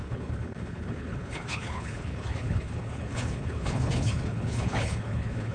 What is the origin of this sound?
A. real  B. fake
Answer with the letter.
B